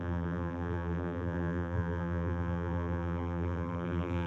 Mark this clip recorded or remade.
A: remade